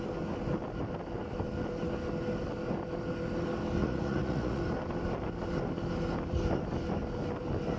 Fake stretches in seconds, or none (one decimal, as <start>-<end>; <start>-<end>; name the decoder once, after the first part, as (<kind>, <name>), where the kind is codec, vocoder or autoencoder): 3.8-4.6 (vocoder, Vocos)